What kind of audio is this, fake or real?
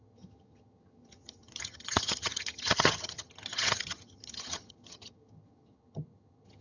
fake